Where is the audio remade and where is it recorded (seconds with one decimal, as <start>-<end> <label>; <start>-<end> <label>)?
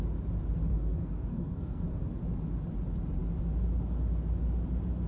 0.0-0.7 recorded; 0.7-2.0 remade; 2.0-5.1 recorded